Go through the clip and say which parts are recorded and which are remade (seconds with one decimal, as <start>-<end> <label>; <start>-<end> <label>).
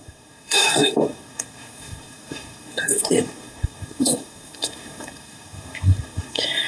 0.0-6.7 remade